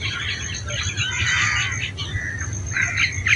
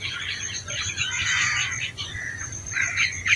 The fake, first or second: second